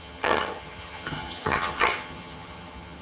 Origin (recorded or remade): remade